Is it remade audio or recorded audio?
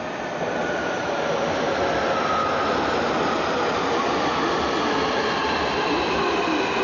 recorded